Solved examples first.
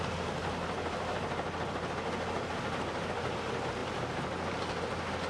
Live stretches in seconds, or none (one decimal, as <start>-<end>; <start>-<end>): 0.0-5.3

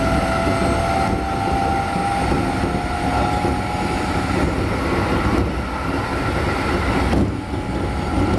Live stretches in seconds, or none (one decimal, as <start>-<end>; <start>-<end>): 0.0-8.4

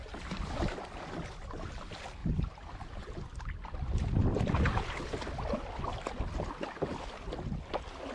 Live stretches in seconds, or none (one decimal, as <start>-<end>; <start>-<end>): 1.3-2.2; 5.0-8.1

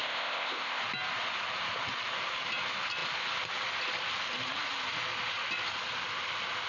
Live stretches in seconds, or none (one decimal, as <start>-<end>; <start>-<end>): 0.8-6.7

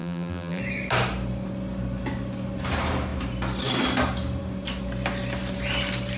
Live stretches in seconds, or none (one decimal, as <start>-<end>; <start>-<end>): 0.6-6.2